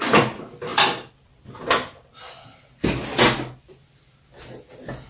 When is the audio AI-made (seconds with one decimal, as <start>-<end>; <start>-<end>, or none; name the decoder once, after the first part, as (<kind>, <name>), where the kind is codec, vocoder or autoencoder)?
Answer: none